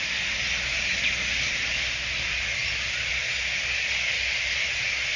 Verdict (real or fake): real